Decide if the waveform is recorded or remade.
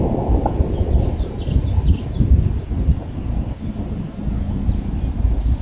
recorded